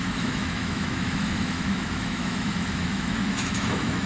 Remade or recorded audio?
remade